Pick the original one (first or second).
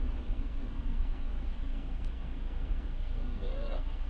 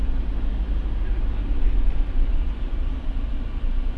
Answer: second